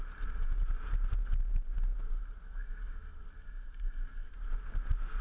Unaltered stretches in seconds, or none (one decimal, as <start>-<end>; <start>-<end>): 0.0-5.2